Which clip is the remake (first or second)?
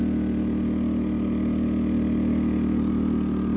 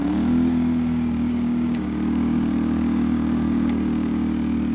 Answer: second